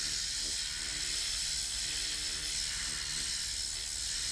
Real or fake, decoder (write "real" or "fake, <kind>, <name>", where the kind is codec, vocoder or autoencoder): real